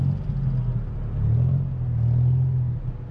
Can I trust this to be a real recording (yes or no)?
yes